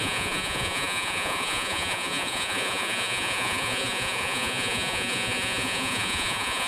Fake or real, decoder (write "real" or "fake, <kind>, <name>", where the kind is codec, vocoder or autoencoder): fake, vocoder, Vocos